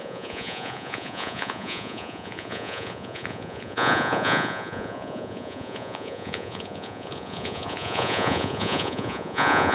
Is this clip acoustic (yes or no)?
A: no